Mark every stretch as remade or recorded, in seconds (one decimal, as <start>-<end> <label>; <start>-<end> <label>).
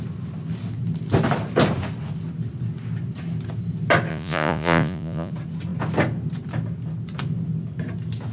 0.0-4.1 recorded; 4.1-5.3 remade; 5.3-8.3 recorded